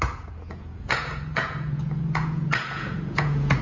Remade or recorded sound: remade